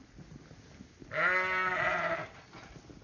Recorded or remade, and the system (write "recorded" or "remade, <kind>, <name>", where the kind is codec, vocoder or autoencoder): recorded